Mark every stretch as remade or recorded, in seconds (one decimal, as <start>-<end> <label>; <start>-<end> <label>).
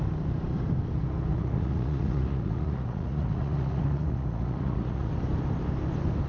0.0-1.3 recorded; 1.3-5.1 remade; 5.1-6.3 recorded